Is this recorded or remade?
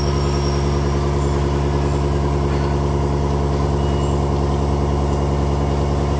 recorded